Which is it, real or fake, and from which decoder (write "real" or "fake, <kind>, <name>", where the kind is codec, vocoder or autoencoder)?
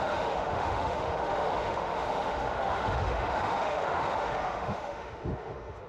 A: fake, autoencoder, DAC-VAE